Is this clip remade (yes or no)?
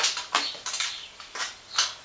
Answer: no